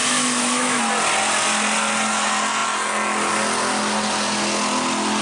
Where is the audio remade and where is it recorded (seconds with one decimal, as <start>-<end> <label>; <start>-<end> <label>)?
0.0-0.8 remade; 0.8-5.2 recorded